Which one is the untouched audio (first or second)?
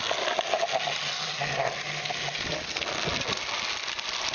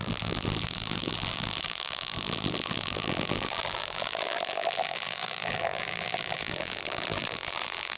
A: first